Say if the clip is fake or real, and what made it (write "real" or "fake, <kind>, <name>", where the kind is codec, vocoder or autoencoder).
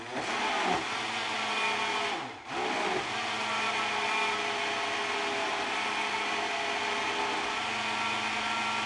real